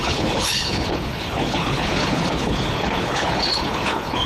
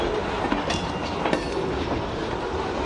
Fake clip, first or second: first